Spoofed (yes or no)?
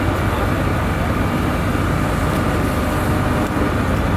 no